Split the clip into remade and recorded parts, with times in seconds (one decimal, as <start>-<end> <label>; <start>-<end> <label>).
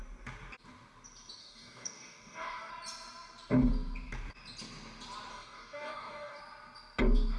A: 0.0-1.4 recorded; 1.4-2.7 remade; 2.7-5.3 recorded; 5.3-6.4 remade; 6.4-7.4 recorded